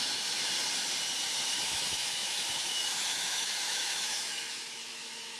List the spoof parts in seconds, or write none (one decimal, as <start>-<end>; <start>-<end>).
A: 0.0-0.4; 1.6-5.4